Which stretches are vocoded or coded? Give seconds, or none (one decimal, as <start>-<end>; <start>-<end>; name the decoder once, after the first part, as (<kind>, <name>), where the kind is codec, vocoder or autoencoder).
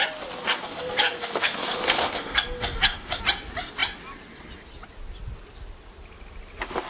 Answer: 0.4-3.2 (codec, SNAC)